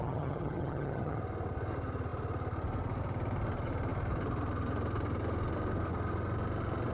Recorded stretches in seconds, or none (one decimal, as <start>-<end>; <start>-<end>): 1.2-6.9